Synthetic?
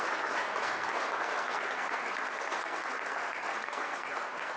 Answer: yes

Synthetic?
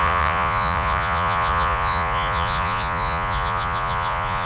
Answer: yes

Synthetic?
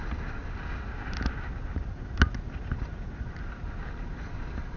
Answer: no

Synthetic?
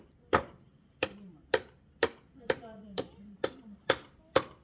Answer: yes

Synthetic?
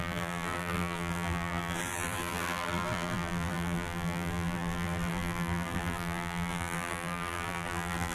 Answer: yes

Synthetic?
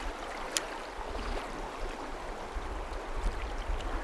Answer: no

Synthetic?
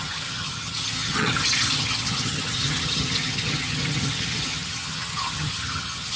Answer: yes